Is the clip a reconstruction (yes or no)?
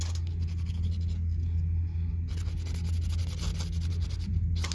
no